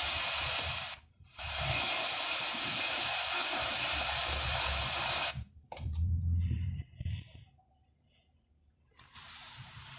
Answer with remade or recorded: remade